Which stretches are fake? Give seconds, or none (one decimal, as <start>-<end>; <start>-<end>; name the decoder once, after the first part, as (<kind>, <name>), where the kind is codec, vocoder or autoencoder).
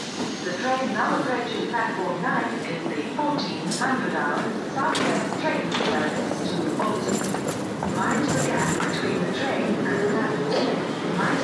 none